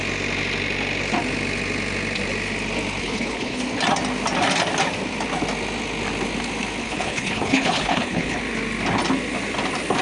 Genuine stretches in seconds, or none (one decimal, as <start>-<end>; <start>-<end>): 0.0-3.0; 3.6-6.8; 8.4-10.0